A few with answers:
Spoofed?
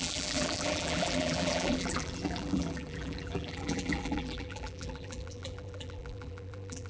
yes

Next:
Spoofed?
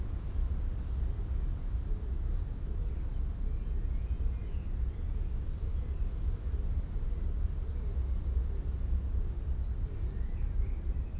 no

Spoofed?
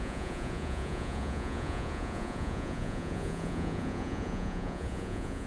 yes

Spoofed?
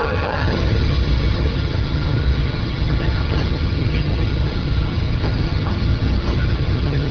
yes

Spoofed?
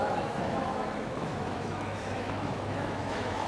yes